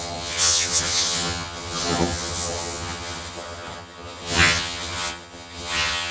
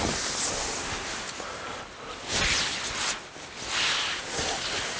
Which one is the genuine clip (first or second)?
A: second